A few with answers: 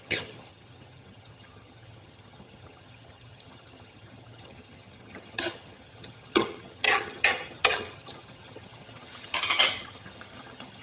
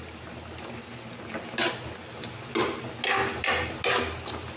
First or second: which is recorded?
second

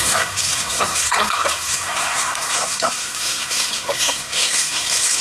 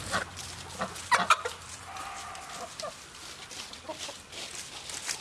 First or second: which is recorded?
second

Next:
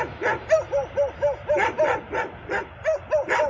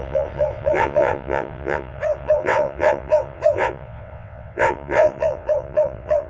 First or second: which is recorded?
first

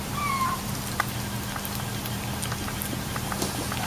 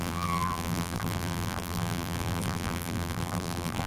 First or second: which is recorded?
first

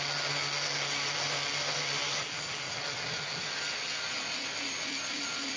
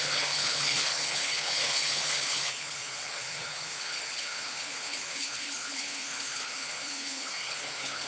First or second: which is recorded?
first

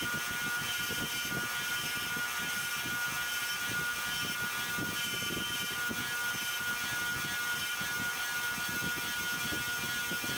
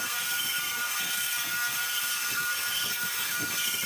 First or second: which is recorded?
first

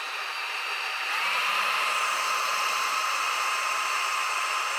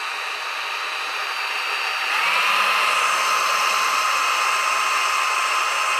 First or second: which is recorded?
second